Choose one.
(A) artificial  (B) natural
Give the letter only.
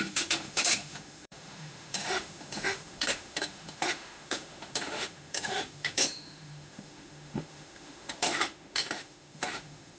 A